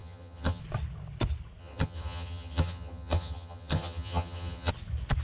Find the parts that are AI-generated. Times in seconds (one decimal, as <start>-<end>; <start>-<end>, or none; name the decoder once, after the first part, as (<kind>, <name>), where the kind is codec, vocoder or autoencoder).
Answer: 0.0-0.6 (vocoder, HiFi-GAN); 1.6-4.7